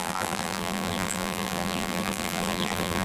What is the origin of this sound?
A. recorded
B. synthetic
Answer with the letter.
B